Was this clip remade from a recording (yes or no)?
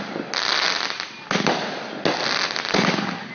no